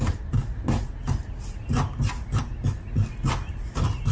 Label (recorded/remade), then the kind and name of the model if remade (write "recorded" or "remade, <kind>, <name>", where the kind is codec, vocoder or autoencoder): recorded